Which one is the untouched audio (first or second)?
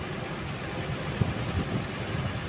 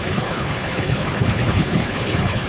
first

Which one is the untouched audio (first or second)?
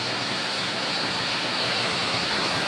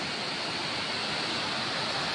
second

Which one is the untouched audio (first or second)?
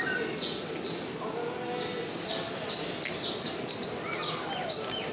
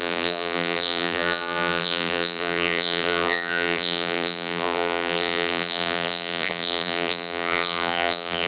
first